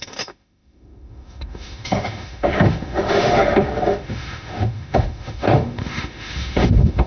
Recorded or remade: remade